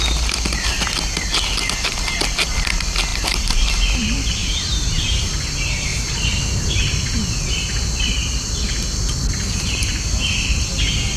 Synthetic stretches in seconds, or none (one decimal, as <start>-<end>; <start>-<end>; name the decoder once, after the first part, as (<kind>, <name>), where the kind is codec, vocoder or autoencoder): 3.1-3.8 (vocoder, BigVGAN v2); 4.4-5.3; 5.9-6.7